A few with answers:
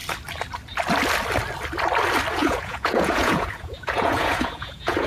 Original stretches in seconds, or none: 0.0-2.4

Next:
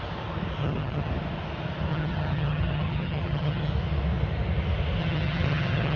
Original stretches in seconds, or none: 0.0-0.6; 1.1-1.9; 3.7-5.0

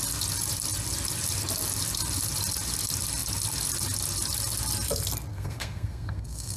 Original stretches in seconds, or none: 0.0-5.3